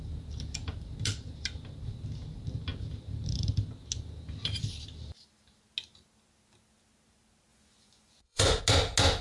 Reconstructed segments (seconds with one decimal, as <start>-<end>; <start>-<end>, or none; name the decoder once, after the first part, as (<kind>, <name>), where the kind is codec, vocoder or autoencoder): 7.5-8.6 (vocoder, Vocos)